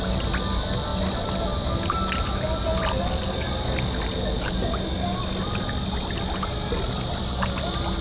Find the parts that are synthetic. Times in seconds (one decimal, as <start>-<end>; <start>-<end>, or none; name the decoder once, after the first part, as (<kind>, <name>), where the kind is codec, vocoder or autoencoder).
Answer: none